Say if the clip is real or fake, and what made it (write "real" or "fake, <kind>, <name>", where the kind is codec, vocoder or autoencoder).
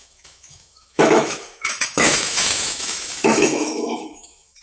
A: fake, autoencoder, DAC-VAE